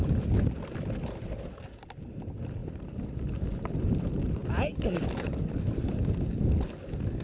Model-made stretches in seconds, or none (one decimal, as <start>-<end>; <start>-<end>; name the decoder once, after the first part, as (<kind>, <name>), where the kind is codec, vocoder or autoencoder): none